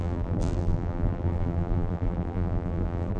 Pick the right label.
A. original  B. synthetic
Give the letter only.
B